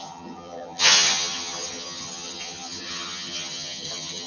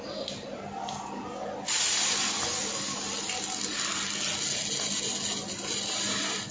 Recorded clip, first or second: second